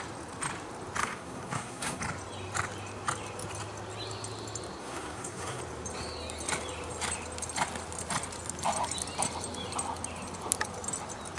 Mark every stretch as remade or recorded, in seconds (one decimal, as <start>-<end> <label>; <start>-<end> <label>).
0.0-1.0 recorded; 1.0-2.0 remade; 2.0-4.8 recorded; 4.8-5.6 remade; 5.6-11.4 recorded